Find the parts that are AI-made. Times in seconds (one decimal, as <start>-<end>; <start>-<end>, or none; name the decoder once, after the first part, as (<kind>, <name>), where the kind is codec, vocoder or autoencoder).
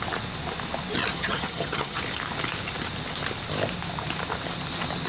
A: 1.1-2.0 (vocoder, HiFi-GAN)